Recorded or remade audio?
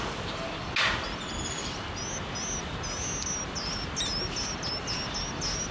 recorded